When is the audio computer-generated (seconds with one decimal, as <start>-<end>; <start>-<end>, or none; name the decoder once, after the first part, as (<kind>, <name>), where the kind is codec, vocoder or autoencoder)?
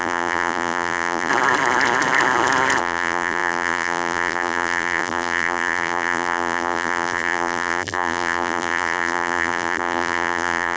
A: 0.0-1.3 (vocoder, BigVGAN v2); 2.8-10.8